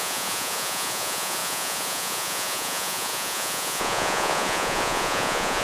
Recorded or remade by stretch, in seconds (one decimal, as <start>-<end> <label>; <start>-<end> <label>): 0.0-5.6 remade